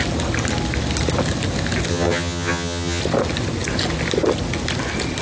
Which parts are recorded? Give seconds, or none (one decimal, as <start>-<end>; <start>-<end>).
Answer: 0.0-1.9; 3.0-5.2